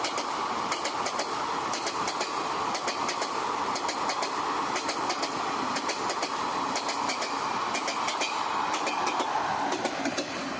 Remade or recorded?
recorded